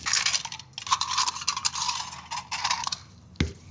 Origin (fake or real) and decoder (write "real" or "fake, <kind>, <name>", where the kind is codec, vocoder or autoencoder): real